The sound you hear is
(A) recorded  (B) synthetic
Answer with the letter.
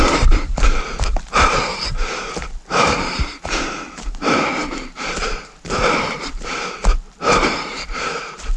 B